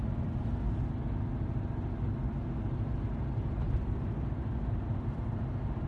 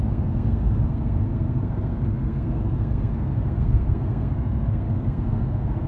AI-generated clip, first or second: second